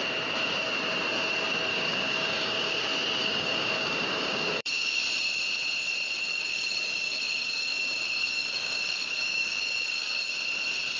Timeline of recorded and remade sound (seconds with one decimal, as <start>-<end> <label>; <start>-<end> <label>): 0.0-1.7 recorded; 1.7-2.8 remade; 2.8-3.2 recorded; 3.2-5.0 remade; 5.0-6.3 recorded; 6.3-10.3 remade; 10.3-11.0 recorded